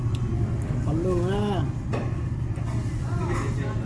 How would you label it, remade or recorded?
recorded